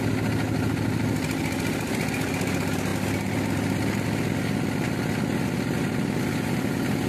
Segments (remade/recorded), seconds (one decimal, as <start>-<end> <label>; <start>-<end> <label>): 0.0-7.1 recorded